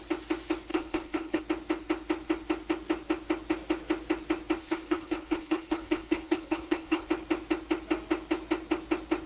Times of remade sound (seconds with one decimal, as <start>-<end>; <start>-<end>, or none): 0.7-1.4; 4.6-7.1